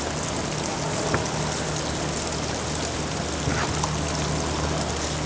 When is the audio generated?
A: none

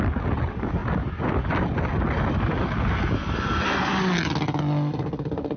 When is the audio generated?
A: none

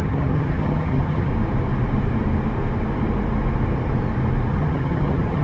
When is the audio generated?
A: 0.0-1.3 (vocoder, HiFi-GAN); 4.5-5.4

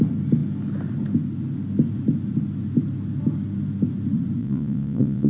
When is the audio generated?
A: 4.4-5.3 (vocoder, Vocos)